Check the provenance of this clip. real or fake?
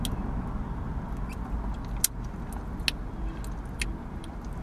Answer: real